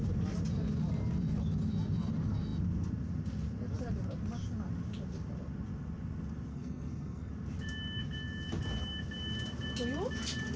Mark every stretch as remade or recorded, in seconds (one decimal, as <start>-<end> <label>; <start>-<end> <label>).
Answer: 0.0-6.5 recorded; 6.5-7.3 remade; 7.3-10.6 recorded